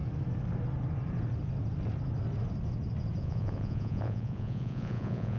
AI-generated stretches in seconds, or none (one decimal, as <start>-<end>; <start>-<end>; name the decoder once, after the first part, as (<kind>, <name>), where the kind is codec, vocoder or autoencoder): 3.2-5.4 (vocoder, Vocos)